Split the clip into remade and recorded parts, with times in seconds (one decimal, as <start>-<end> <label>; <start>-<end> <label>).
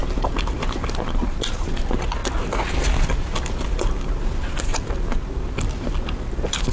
0.0-6.7 recorded